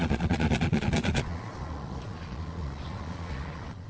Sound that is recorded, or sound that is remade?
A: remade